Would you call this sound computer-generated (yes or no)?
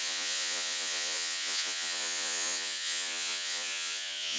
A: yes